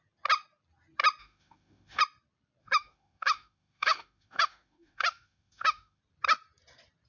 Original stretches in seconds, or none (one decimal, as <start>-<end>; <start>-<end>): 0.0-1.2; 2.0-2.6; 6.0-7.1